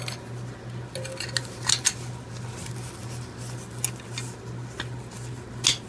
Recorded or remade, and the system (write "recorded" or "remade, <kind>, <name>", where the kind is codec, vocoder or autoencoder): recorded